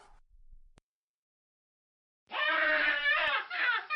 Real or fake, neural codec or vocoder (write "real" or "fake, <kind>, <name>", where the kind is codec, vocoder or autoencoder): fake, vocoder, BigVGAN v2